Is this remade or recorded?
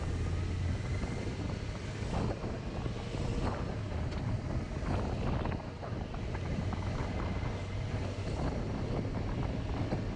recorded